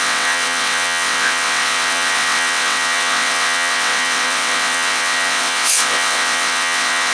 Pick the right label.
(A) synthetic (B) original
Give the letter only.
A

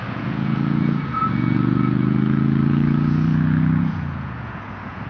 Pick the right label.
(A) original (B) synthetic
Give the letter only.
B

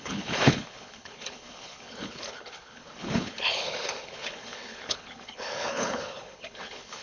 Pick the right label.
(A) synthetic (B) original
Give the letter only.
A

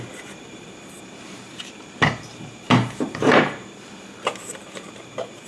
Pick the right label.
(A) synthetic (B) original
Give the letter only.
A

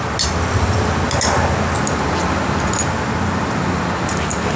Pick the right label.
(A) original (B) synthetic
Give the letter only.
A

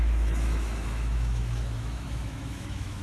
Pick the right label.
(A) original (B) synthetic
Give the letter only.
B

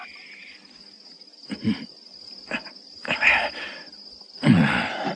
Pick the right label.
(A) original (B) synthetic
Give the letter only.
A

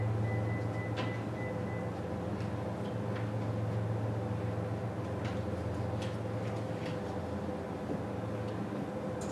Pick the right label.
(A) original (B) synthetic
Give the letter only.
A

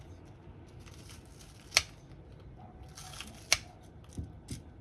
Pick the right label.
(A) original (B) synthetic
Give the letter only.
A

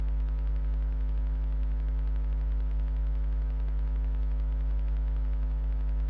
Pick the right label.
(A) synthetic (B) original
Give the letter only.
A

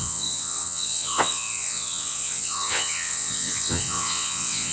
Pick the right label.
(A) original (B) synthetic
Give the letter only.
B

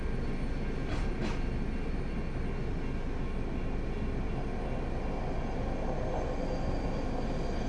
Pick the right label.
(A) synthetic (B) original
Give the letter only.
B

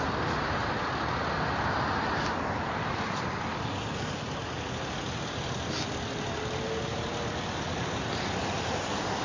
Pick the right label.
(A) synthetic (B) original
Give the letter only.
B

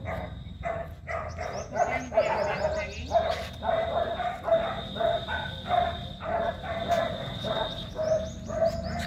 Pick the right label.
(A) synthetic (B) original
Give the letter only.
B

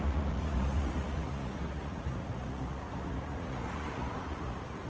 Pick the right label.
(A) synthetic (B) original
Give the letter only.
A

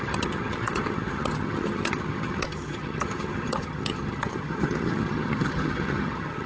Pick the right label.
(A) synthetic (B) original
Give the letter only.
A